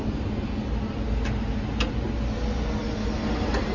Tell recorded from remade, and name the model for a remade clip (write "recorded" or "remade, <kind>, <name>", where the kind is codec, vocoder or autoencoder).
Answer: recorded